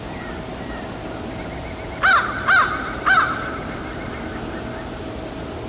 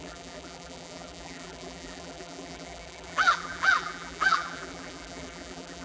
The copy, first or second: second